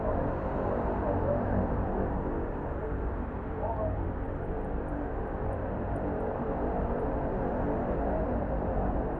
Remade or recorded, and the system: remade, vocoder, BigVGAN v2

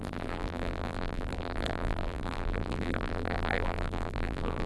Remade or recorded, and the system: remade, vocoder, BigVGAN v2